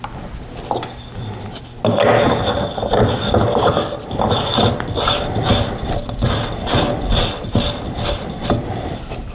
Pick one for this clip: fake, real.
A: real